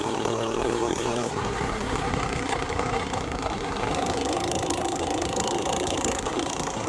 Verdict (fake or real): fake